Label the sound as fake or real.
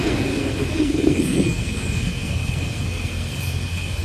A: fake